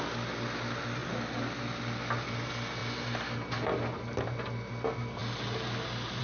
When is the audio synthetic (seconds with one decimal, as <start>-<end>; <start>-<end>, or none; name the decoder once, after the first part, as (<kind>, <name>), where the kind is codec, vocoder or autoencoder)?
none